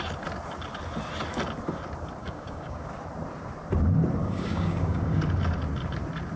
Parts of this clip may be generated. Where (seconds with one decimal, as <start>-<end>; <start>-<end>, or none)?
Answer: 2.2-2.9; 4.2-5.2